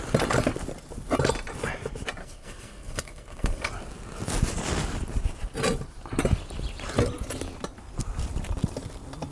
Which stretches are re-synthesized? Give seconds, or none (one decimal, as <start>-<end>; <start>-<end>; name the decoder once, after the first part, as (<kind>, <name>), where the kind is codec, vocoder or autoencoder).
2.2-3.7 (codec, SNAC)